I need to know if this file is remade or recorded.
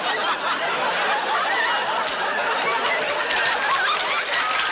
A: recorded